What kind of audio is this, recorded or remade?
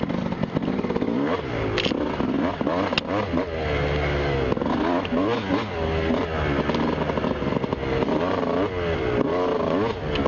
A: recorded